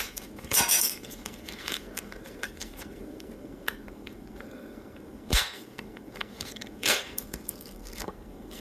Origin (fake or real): fake